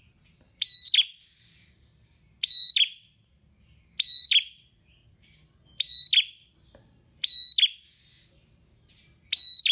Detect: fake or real real